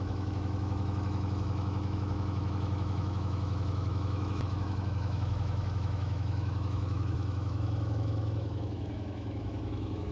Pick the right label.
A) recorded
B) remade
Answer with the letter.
B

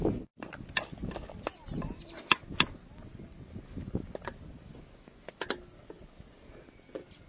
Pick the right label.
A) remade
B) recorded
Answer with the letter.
B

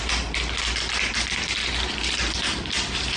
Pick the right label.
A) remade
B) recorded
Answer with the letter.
A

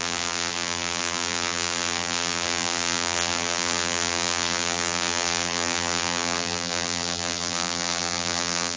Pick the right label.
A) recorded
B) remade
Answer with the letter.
B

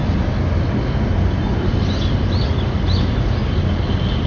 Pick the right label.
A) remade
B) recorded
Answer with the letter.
B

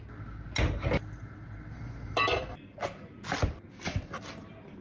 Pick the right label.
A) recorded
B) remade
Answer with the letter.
A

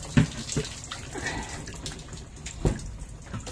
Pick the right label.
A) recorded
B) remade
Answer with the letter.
A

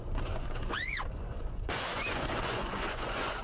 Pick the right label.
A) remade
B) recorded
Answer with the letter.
A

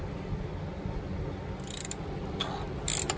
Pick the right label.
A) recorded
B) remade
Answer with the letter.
A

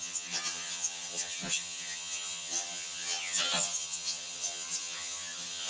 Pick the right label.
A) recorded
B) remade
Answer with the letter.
B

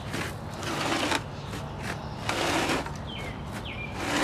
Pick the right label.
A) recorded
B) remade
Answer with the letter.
A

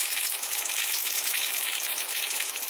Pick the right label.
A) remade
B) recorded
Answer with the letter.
A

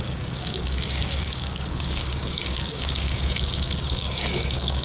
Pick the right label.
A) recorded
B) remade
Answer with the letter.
B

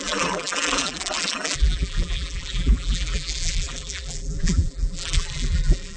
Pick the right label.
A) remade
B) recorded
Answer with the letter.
A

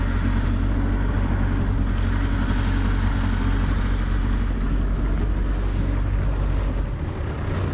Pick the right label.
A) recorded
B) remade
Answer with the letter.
A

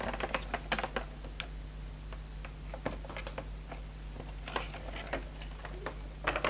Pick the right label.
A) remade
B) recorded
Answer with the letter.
B